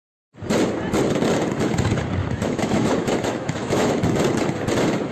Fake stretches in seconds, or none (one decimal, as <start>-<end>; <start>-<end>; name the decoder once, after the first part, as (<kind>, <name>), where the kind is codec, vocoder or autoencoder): 2.2-3.9 (autoencoder, DAC-VAE)